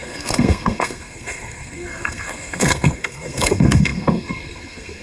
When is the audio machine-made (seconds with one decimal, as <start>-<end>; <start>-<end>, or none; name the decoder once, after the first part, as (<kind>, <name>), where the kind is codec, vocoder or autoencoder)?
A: 0.0-5.0 (codec, SNAC)